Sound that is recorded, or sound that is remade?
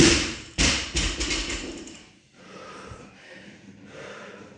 remade